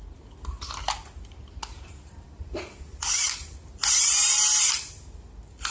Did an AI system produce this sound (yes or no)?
no